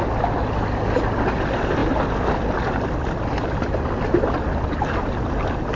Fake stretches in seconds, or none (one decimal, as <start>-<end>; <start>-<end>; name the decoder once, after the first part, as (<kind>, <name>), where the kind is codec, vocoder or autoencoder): none